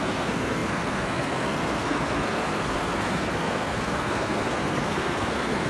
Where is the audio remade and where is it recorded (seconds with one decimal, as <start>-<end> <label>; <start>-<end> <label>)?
0.0-5.7 remade